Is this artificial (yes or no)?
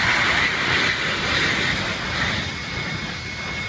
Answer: no